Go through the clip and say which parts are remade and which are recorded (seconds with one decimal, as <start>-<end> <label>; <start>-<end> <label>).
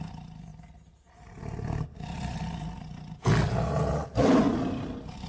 0.0-5.3 recorded